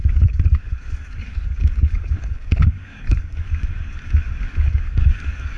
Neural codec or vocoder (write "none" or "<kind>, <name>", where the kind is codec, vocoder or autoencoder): codec, DAC